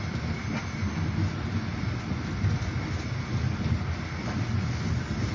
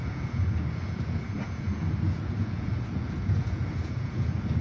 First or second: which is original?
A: first